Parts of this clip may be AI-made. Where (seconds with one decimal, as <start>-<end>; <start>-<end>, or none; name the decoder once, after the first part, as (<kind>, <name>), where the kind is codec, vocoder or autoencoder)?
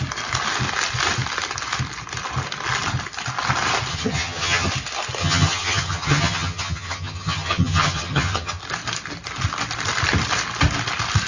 3.9-4.7 (vocoder, HiFi-GAN); 5.2-8.6